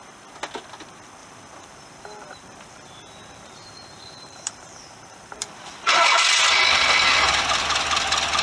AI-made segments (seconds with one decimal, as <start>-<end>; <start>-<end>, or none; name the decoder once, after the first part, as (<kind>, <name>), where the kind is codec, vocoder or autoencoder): 1.2-6.2 (vocoder, BigVGAN v2)